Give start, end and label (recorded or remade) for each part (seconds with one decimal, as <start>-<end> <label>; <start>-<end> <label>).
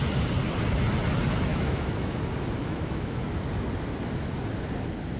0.0-1.5 recorded; 1.5-2.2 remade; 2.2-2.6 recorded; 2.6-3.2 remade; 3.2-5.2 recorded